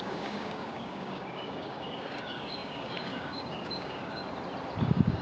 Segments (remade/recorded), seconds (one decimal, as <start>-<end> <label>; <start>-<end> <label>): 0.0-4.2 remade; 4.2-4.8 recorded; 4.8-5.2 remade